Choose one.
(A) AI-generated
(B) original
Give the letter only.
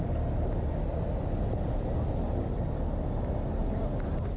B